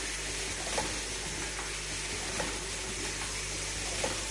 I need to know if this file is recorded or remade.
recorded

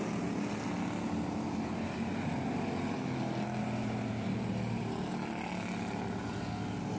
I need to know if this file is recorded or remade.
recorded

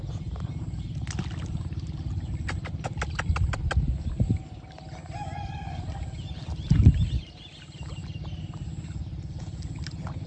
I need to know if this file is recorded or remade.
recorded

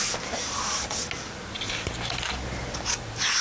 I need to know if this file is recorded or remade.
recorded